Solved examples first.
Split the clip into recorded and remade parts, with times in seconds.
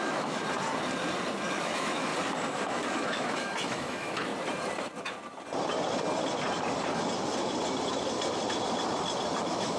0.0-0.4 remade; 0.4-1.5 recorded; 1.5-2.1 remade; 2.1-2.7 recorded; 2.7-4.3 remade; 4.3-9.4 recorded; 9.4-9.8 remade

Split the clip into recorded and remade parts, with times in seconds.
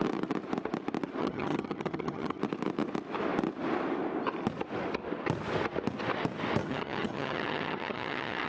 0.0-1.2 recorded; 1.2-2.4 remade; 2.4-6.6 recorded; 6.6-8.5 remade